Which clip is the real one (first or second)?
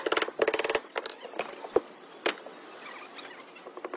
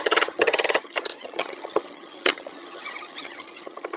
first